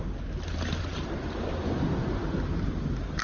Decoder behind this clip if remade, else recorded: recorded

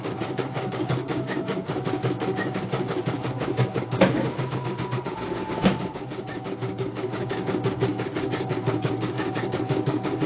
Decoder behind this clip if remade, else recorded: remade, codec, DAC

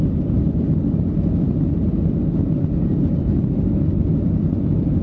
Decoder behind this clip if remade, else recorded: recorded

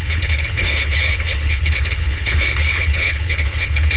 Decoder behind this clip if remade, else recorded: remade, codec, HILCodec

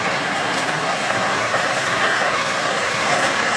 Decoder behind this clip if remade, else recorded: remade, codec, SNAC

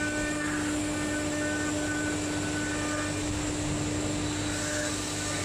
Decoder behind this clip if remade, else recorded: recorded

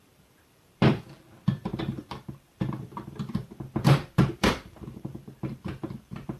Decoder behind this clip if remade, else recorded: remade, vocoder, BigVGAN v2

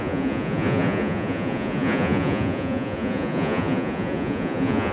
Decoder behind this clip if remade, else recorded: remade, vocoder, Vocos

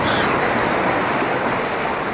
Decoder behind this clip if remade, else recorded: recorded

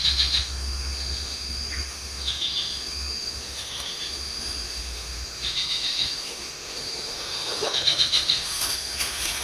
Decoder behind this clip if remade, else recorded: remade, autoencoder, DAC-VAE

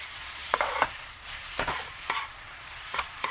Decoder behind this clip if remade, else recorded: remade, vocoder, Vocos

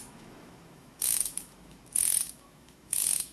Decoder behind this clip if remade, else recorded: remade, autoencoder, DAC-VAE